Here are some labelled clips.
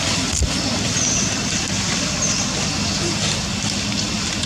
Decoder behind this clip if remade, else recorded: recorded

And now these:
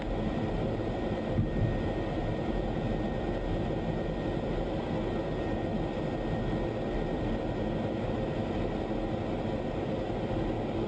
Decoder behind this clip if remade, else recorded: recorded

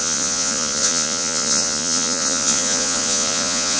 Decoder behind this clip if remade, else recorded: remade, vocoder, Vocos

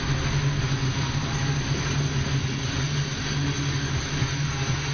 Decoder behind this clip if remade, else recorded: recorded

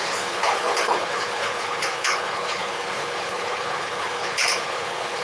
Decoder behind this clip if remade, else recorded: remade, codec, HILCodec